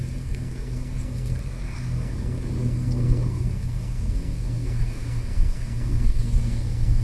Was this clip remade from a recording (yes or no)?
yes